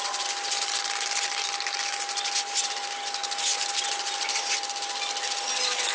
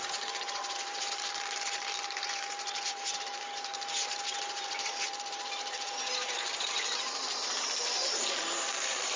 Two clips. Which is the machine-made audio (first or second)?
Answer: second